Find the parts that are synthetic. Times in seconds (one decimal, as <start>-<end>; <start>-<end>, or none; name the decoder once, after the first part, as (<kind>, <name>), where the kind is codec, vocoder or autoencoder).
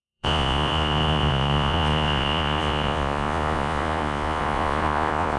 0.0-5.4 (vocoder, Vocos)